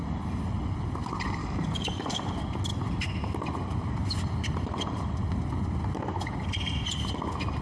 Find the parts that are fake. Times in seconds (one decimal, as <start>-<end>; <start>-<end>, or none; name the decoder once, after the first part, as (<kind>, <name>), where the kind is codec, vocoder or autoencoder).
1.4-2.3 (codec, DAC)

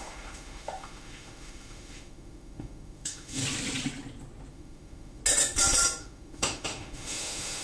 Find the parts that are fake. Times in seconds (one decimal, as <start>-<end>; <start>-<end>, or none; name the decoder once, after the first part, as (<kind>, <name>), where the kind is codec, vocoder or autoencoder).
0.0-3.4 (autoencoder, DAC-VAE); 4.5-5.2; 6.0-7.6